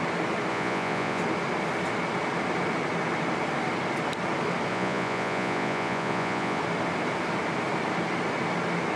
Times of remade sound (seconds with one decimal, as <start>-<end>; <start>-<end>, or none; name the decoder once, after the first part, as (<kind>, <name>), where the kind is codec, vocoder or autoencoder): 0.5-1.2 (vocoder, Vocos); 4.7-6.6